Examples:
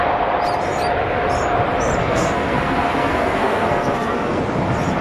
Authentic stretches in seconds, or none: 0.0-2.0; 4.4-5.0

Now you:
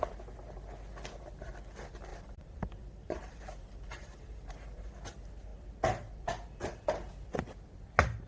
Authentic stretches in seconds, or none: 0.0-2.1; 4.9-8.3

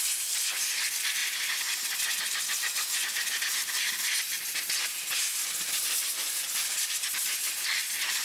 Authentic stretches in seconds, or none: 1.2-3.9